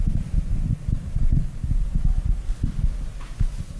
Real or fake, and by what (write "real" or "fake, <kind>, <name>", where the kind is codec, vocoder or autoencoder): real